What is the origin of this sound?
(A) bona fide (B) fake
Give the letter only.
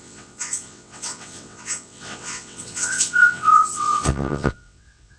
B